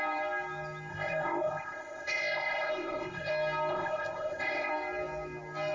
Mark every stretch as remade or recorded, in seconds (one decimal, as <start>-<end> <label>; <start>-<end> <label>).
0.0-0.9 recorded; 0.9-3.3 remade; 3.3-3.7 recorded; 3.7-4.7 remade; 4.7-5.7 recorded